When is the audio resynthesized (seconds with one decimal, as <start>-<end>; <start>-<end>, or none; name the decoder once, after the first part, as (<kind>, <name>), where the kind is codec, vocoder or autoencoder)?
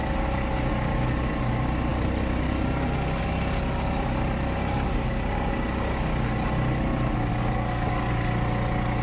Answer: 7.3-8.1 (codec, DAC)